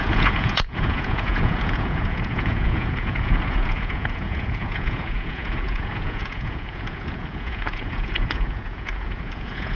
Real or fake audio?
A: fake